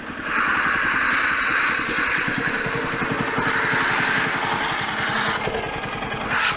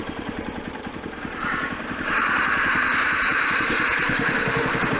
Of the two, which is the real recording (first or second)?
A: first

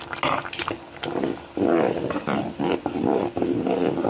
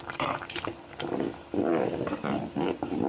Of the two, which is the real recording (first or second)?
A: first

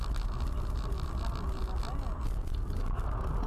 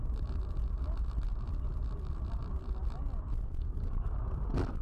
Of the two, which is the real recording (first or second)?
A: first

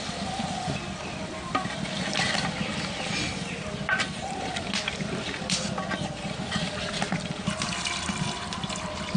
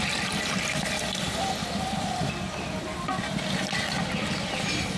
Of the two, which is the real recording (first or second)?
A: second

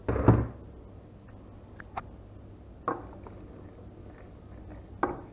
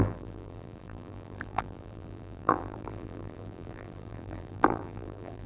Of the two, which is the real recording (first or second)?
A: first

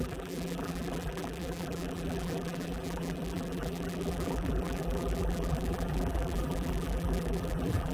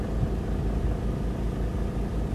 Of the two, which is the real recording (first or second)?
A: second